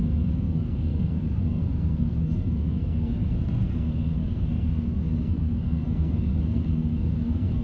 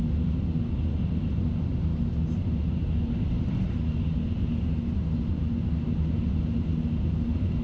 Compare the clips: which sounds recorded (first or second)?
second